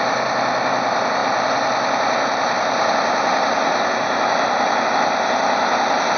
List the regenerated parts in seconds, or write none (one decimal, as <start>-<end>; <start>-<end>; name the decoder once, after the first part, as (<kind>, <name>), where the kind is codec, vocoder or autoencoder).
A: none